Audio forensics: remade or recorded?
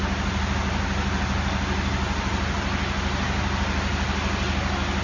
recorded